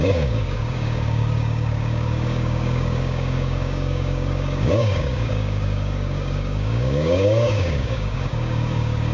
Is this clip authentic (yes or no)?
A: no